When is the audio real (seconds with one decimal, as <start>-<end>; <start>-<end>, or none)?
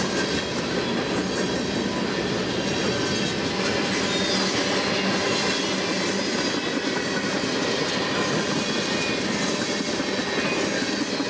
0.0-11.3